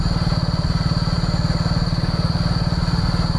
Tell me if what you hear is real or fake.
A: real